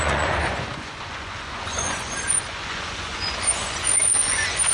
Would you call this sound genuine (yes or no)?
no